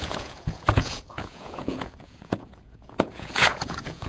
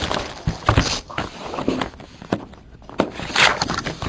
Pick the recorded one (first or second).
second